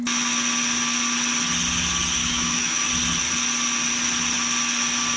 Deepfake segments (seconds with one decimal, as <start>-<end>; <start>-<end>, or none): 2.2-2.9